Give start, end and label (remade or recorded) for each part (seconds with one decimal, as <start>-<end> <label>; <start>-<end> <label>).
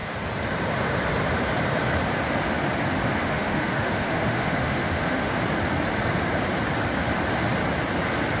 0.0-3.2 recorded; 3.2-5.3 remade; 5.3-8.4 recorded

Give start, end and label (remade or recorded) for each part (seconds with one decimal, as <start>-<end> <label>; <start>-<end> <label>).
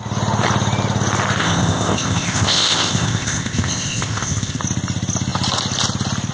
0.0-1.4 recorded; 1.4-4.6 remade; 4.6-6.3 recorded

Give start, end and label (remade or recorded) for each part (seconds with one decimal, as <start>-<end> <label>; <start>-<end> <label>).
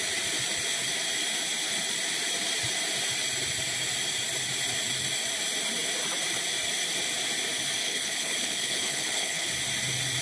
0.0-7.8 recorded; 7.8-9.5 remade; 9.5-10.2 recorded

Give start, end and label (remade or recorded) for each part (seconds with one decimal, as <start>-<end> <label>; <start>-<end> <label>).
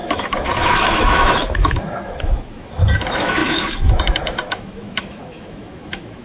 0.0-6.2 remade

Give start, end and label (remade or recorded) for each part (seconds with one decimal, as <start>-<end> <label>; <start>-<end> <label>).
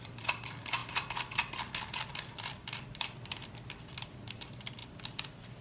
0.0-0.8 remade; 0.8-1.9 recorded; 1.9-5.6 remade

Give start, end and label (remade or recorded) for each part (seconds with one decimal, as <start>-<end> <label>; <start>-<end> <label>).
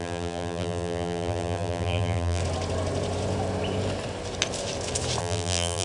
0.0-2.4 remade; 2.4-5.2 recorded; 5.2-5.8 remade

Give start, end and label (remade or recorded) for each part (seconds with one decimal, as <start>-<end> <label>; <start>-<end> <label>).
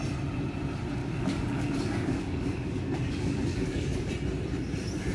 0.0-1.0 recorded; 1.0-4.1 remade; 4.1-5.1 recorded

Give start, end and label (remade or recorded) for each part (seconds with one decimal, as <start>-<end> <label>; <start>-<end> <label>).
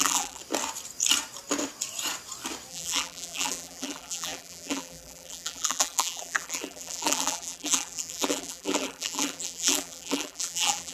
0.0-0.4 remade; 0.4-2.7 recorded; 2.7-10.9 remade